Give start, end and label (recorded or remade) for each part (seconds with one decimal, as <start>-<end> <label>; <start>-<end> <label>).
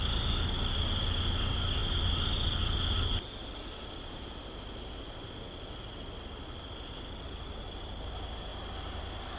0.0-9.4 recorded